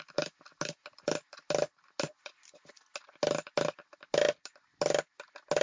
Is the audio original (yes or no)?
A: yes